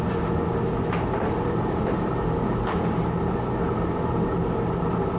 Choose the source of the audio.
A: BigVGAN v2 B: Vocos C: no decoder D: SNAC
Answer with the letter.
C